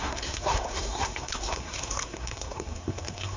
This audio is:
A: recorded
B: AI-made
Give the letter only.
B